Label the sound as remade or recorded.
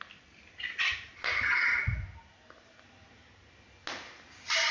recorded